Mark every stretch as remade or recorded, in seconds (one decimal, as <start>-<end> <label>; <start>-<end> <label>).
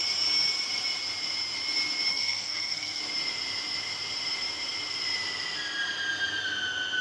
0.0-2.1 recorded; 2.1-3.0 remade; 3.0-7.0 recorded